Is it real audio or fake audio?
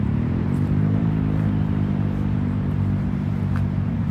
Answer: fake